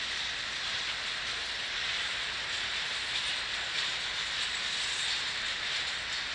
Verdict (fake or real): real